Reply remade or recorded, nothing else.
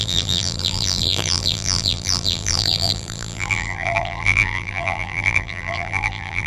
remade